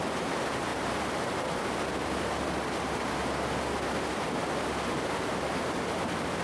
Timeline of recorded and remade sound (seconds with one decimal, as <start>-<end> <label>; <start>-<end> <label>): 0.0-6.4 recorded